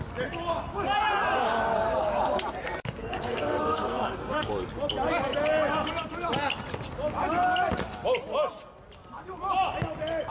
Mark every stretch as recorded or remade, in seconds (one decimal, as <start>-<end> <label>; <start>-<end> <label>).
0.0-3.0 recorded; 3.0-4.5 remade; 4.5-10.3 recorded